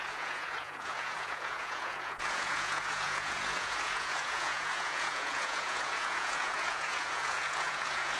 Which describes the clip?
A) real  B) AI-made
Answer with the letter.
B